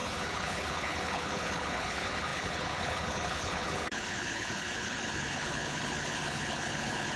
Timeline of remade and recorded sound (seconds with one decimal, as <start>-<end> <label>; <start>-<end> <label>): 0.0-7.2 remade